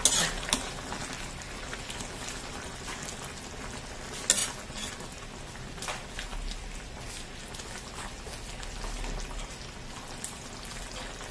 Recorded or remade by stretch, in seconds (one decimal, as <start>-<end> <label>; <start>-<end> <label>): 0.0-11.3 recorded